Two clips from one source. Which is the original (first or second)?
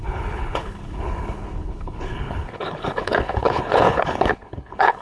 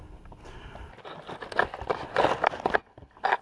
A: second